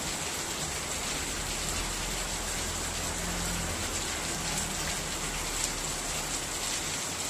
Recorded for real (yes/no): yes